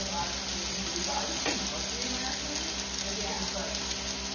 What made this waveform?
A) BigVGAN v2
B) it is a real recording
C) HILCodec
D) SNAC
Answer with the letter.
B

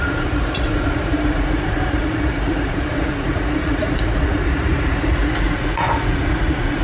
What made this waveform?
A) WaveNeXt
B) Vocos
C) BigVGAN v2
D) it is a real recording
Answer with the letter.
B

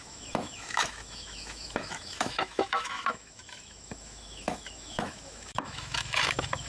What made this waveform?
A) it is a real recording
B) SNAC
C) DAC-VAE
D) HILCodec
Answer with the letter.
C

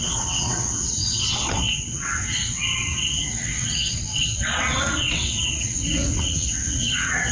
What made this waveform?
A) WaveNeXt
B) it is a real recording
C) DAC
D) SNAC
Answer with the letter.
A